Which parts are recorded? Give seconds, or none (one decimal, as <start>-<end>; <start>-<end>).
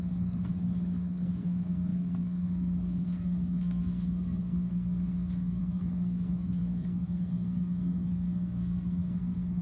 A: none